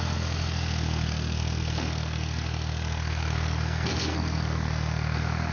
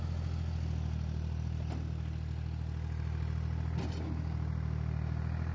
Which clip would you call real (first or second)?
second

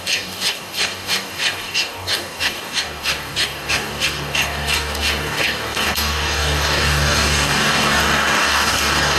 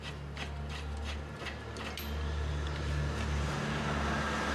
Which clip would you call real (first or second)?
second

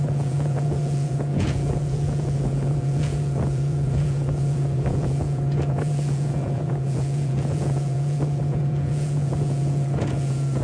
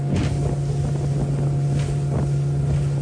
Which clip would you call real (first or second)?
second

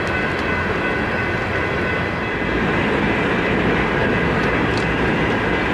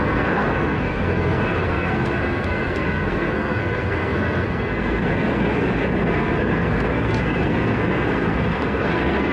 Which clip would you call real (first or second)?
first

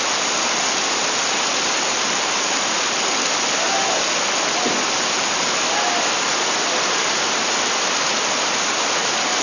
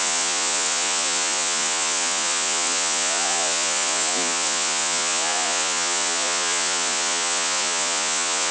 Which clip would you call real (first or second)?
first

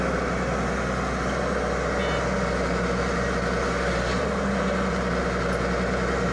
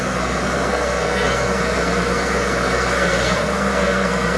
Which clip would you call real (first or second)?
first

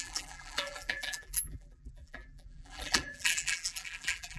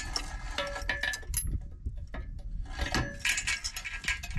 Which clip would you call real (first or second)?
second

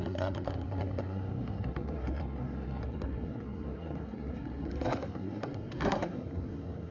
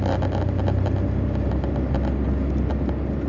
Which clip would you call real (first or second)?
second